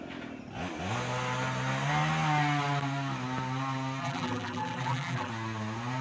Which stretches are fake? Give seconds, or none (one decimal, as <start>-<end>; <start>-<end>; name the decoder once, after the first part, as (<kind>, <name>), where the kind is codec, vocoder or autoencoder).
4.0-5.3 (vocoder, BigVGAN v2)